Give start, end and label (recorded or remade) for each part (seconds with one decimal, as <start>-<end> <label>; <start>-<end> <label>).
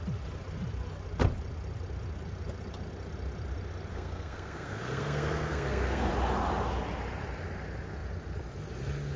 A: 0.0-3.9 recorded; 3.9-6.1 remade; 6.1-9.2 recorded